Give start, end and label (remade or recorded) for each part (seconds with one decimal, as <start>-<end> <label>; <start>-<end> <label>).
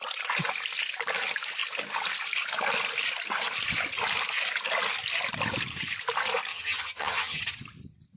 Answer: 0.0-6.5 recorded; 6.5-7.4 remade; 7.4-8.2 recorded